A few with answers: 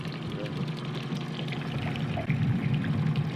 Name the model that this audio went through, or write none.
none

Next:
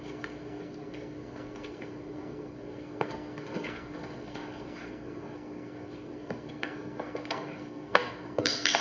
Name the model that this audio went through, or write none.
codec, SNAC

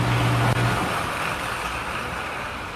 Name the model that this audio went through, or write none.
none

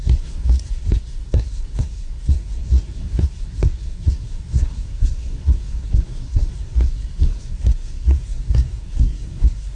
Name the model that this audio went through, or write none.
codec, SNAC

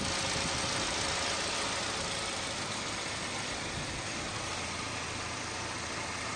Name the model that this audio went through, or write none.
none